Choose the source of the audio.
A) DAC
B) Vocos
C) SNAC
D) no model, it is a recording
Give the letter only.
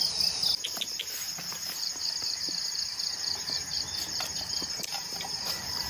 D